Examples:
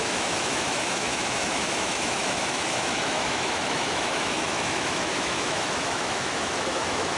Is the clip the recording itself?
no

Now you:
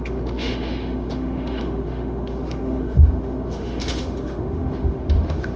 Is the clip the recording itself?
no